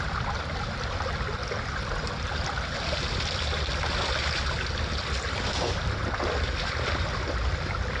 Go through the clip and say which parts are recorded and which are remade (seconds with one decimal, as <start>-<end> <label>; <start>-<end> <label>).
0.0-8.0 recorded